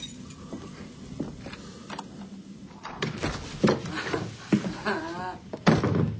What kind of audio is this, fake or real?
real